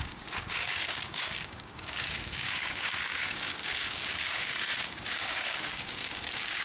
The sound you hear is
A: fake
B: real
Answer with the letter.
A